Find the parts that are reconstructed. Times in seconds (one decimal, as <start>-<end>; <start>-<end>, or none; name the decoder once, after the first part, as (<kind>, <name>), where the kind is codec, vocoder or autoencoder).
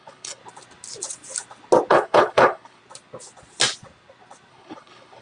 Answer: 0.0-0.4 (codec, HILCodec); 1.9-2.8; 4.5-5.2